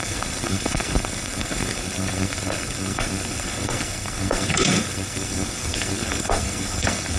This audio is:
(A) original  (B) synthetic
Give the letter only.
B